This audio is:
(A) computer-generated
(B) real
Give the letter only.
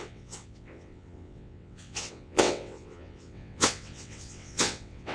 A